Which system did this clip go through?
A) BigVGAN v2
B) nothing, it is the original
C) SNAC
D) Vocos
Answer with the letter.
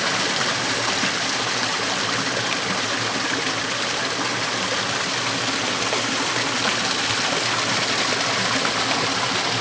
B